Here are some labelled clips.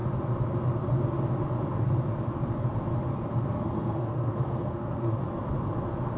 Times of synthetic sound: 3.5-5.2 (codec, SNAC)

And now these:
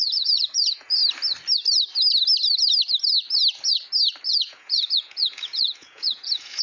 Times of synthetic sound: 0.0-1.0 (vocoder, Vocos); 4.3-6.6